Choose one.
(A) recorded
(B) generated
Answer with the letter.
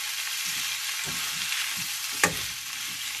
A